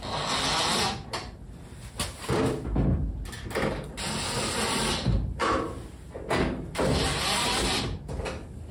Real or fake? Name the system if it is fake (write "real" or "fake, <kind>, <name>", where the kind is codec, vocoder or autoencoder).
real